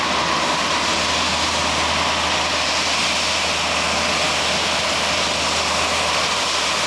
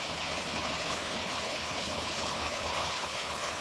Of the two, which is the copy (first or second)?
second